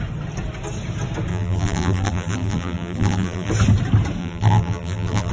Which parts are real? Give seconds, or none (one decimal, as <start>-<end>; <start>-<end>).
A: 0.0-1.3; 3.5-4.2